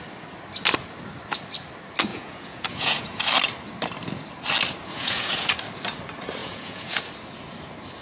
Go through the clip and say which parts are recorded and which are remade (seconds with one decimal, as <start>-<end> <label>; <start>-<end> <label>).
0.0-2.1 recorded; 2.1-3.2 remade; 3.2-4.9 recorded; 4.9-5.5 remade; 5.5-6.4 recorded; 6.4-7.0 remade; 7.0-8.0 recorded